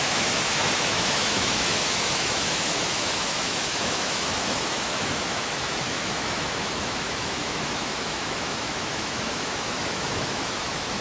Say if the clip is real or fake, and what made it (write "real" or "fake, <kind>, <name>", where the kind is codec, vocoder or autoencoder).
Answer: fake, autoencoder, DAC-VAE